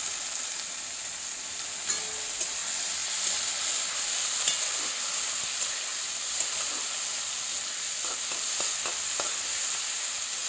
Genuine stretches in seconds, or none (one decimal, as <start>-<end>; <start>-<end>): 0.0-10.5